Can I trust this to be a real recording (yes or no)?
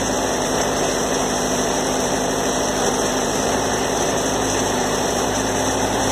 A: no